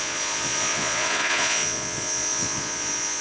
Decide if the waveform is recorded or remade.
remade